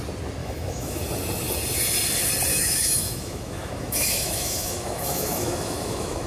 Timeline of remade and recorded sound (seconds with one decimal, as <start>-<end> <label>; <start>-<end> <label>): 0.0-0.4 recorded; 0.4-1.0 remade; 1.0-2.5 recorded; 2.5-6.3 remade

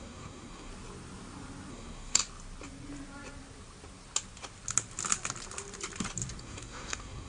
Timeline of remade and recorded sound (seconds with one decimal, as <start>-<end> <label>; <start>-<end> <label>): 0.0-0.7 remade; 0.7-1.7 recorded; 1.7-2.2 remade; 2.2-6.4 recorded; 6.4-7.3 remade

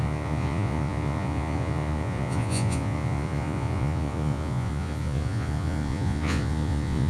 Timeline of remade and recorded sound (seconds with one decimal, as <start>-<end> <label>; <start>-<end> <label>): 0.0-7.1 remade

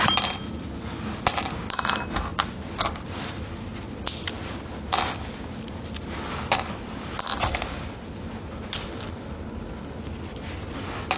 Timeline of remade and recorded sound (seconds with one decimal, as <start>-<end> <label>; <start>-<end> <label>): 0.0-11.2 recorded